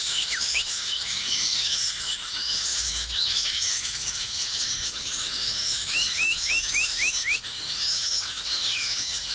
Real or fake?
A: fake